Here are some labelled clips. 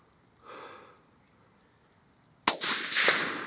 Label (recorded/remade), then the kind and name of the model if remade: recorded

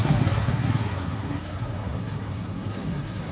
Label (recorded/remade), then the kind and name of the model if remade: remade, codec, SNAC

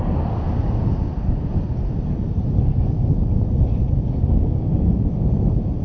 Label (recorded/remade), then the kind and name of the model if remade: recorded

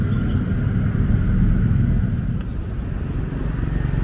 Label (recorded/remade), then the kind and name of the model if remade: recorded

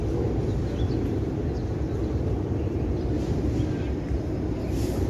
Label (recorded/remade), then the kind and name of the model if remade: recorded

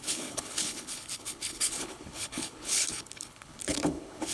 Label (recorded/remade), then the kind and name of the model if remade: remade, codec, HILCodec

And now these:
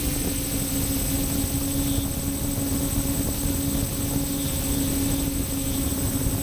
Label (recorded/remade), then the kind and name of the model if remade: recorded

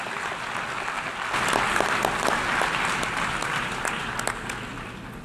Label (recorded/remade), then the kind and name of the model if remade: recorded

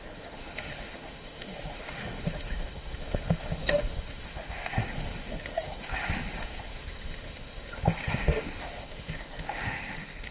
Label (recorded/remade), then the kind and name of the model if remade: remade, autoencoder, DAC-VAE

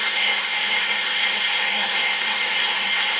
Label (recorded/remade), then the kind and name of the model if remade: remade, codec, SNAC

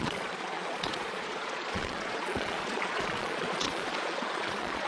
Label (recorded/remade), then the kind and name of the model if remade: remade, vocoder, Vocos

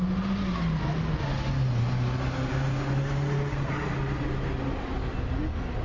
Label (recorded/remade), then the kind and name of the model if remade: recorded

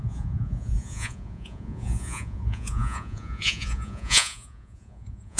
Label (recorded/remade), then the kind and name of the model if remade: remade, vocoder, Vocos